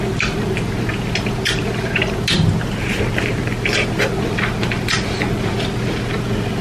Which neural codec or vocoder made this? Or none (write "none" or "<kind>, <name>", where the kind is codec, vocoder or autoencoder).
none